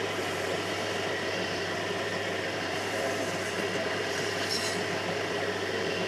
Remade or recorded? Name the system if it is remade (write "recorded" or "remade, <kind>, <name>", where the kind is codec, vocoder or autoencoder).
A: remade, vocoder, BigVGAN v2